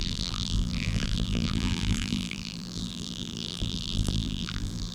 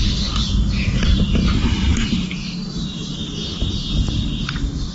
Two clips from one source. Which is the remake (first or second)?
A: first